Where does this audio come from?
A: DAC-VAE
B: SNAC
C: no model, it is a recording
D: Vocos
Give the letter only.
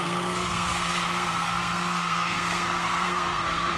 B